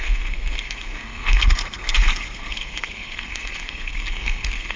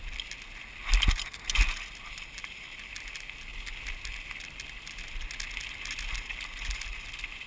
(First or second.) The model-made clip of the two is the first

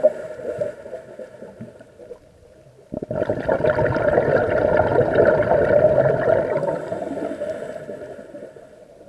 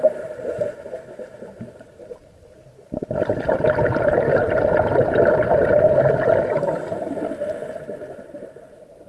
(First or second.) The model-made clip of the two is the second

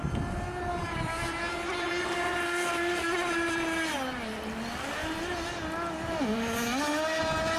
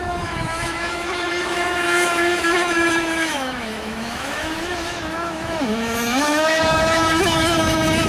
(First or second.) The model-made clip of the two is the second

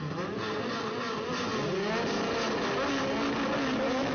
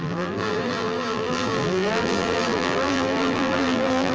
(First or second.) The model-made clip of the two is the second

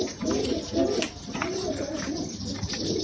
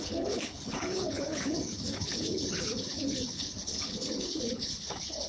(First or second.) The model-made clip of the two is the second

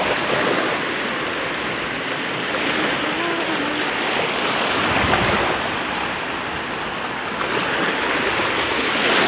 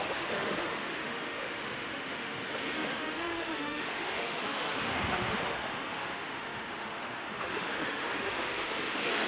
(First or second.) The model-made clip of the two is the second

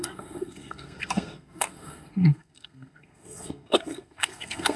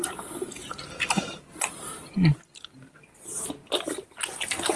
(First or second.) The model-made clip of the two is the first